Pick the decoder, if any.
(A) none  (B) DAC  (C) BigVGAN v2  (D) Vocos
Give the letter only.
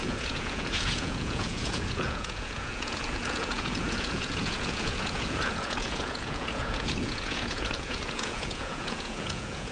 D